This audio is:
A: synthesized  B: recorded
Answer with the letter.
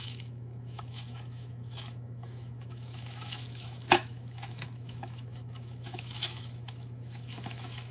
A